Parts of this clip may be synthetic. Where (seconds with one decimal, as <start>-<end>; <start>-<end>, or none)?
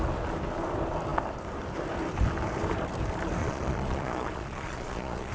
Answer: 3.4-5.3